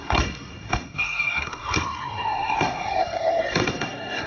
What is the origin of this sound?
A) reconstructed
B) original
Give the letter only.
A